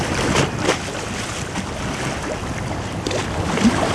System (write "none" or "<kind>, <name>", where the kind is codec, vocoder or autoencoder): vocoder, BigVGAN v2